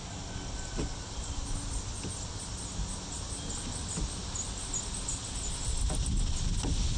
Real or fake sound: real